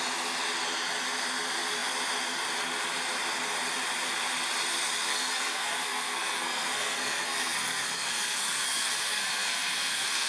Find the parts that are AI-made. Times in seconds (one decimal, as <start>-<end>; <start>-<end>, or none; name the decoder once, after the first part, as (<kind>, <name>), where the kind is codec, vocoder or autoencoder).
5.1-10.3 (codec, SNAC)